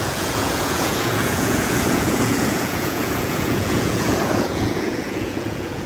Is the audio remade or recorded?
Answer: remade